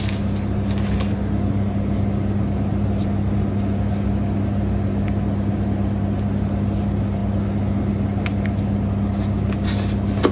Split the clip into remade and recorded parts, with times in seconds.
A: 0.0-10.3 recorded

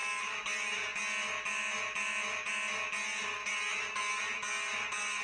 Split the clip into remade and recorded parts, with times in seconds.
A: 0.0-5.2 recorded

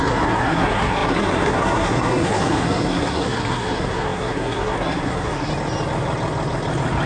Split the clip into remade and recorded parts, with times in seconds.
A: 0.0-5.5 remade; 5.5-7.1 recorded

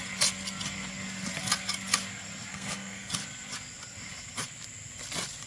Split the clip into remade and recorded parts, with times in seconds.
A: 0.0-2.5 recorded; 2.5-3.1 remade; 3.1-5.5 recorded